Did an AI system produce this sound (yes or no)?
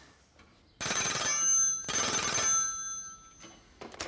no